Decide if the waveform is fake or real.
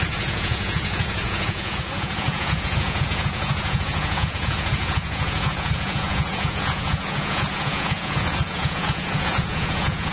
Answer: fake